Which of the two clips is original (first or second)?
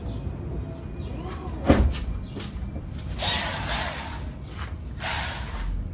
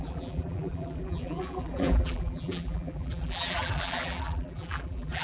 first